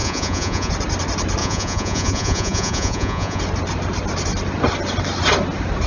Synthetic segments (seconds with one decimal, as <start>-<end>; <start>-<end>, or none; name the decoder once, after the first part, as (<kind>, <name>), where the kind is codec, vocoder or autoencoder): 0.0-0.7 (vocoder, Vocos); 1.4-3.4